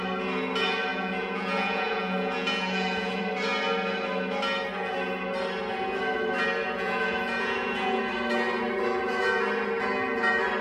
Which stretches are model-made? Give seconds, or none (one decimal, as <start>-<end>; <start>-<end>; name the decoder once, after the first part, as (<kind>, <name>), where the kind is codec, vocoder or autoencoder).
0.9-3.2 (vocoder, Vocos); 6.6-8.0